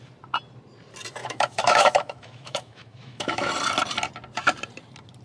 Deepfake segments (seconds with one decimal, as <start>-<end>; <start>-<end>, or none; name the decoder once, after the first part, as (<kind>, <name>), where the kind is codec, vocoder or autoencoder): 1.2-3.5 (autoencoder, DAC-VAE)